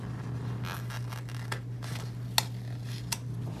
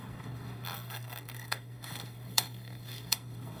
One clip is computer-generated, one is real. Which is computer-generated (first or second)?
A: second